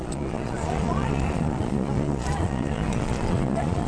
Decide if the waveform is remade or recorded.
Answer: remade